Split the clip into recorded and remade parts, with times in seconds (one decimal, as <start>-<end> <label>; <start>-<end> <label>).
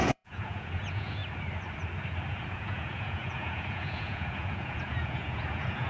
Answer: 0.0-1.2 remade; 1.2-2.3 recorded; 2.3-5.9 remade